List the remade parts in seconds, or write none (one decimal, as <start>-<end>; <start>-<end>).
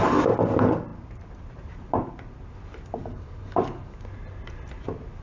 3.0-4.0